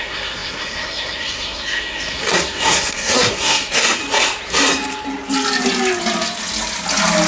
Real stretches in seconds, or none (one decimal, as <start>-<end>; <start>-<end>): 4.0-7.3